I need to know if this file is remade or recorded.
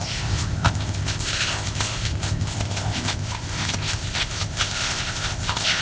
remade